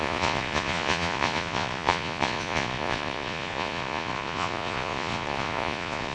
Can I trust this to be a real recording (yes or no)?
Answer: no